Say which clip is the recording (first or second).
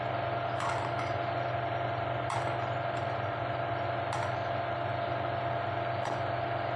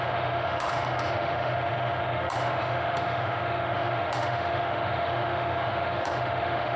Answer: first